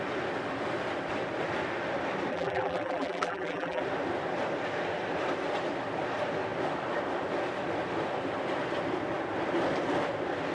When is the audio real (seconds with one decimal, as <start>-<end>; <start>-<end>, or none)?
0.0-2.3; 3.8-10.5